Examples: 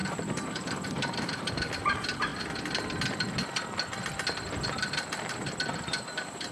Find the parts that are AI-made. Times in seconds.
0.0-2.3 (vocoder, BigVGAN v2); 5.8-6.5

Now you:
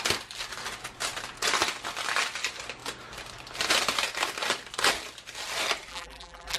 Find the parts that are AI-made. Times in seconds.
5.9-6.6 (vocoder, BigVGAN v2)

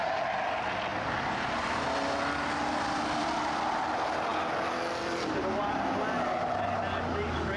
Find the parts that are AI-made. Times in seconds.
none

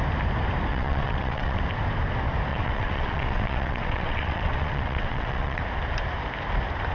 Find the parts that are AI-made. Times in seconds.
0.7-1.6 (vocoder, WaveNeXt); 2.5-5.6

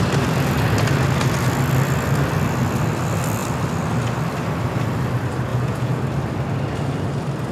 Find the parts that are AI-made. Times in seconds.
5.5-6.0 (vocoder, Vocos)

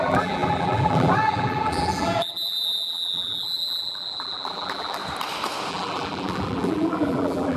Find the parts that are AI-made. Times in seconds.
0.0-5.0 (vocoder, BigVGAN v2); 5.7-7.6

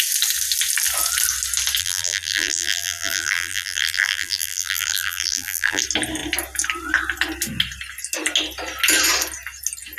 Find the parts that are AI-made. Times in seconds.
1.8-5.8 (vocoder, BigVGAN v2)

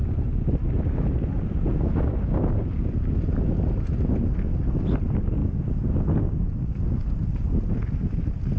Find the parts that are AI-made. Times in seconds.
none